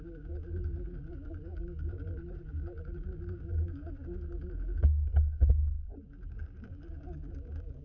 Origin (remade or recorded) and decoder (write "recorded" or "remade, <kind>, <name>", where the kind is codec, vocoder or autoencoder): remade, codec, DAC